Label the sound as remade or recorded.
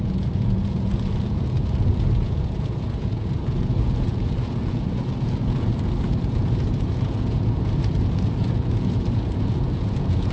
remade